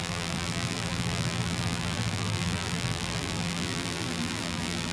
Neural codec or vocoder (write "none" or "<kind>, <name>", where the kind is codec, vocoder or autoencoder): vocoder, BigVGAN v2